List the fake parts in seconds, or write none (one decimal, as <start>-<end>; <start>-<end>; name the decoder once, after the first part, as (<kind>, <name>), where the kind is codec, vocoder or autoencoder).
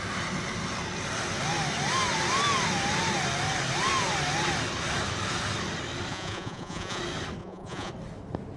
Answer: 6.1-7.0 (vocoder, Vocos); 7.4-7.9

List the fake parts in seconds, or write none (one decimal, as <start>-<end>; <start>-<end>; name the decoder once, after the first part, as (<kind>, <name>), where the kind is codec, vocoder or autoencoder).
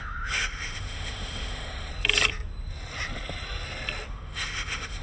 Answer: 0.0-1.9 (autoencoder, DAC-VAE); 4.1-5.0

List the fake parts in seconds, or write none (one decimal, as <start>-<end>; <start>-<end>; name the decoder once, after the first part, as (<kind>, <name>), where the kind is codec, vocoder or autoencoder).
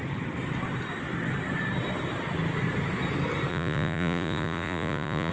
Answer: 3.5-5.3 (vocoder, Vocos)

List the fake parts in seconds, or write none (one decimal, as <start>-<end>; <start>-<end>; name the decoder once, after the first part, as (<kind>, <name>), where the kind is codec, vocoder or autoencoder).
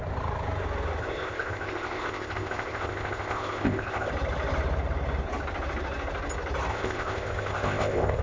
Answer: 1.0-4.1 (codec, ZipCodec); 6.7-8.2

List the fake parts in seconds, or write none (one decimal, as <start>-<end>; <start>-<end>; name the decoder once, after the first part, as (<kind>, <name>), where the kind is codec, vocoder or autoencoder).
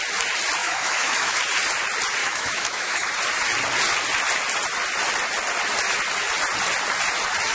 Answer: 0.6-1.4 (autoencoder, DAC-VAE); 2.2-3.1